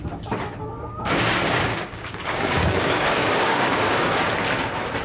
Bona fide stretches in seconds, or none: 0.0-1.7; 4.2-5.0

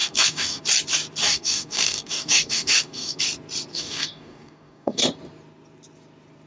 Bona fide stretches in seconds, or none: 0.6-1.2; 3.2-3.7; 5.0-6.5

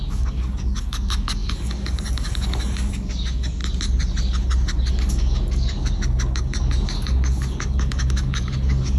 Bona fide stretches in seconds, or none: 3.6-4.9

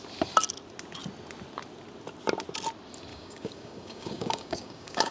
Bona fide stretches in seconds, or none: 0.0-3.1

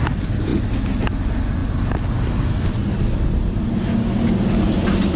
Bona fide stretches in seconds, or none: 0.0-5.2

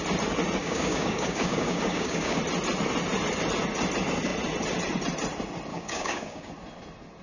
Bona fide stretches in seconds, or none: 0.0-0.6; 2.4-5.7; 6.5-7.2

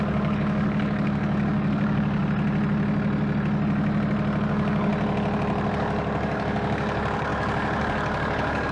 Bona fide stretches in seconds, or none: 2.2-4.5; 4.9-5.7